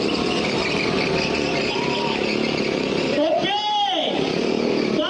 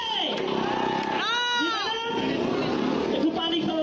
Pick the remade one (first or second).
first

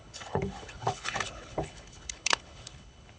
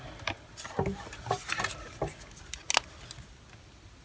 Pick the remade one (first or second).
first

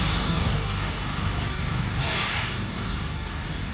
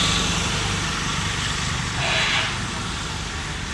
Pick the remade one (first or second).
first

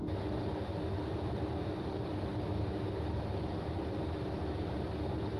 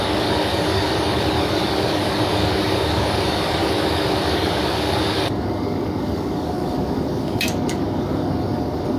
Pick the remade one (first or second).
second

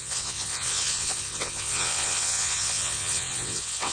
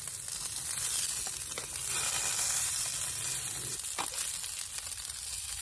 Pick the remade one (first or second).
first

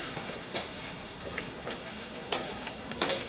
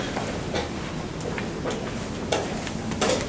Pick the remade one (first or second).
first